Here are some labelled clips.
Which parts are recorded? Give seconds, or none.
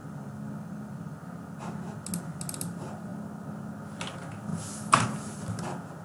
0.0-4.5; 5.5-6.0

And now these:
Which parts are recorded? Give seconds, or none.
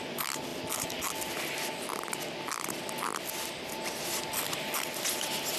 0.0-5.6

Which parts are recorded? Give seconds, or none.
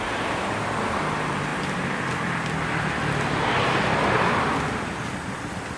0.0-1.5; 4.8-5.8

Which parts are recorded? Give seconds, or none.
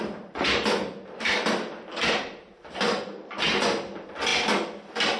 0.0-5.2